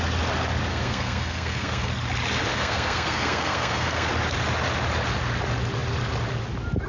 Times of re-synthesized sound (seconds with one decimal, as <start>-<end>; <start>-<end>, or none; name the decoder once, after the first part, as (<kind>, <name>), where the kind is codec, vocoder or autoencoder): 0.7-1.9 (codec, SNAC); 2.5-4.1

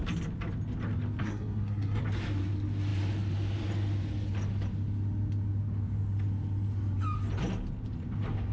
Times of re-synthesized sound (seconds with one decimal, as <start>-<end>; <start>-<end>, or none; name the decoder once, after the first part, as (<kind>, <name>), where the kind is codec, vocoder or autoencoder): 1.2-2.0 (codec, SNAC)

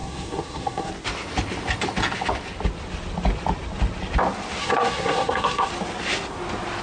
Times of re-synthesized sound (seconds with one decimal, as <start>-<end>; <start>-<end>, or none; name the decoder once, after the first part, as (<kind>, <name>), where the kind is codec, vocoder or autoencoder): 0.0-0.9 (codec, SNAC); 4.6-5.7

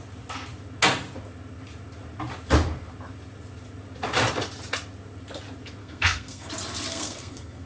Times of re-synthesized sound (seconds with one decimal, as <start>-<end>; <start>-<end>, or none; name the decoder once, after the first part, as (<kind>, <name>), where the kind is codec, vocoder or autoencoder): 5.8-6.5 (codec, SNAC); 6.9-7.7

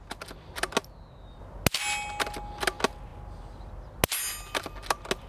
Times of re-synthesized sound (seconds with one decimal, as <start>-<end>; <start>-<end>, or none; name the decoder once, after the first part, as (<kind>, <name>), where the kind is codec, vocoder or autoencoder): none